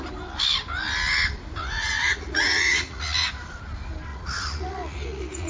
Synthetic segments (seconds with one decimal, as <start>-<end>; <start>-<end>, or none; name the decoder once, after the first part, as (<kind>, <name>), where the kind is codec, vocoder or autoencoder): 1.6-3.3 (vocoder, Vocos); 4.1-5.5